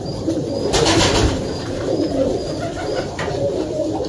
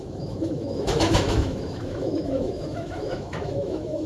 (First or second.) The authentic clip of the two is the first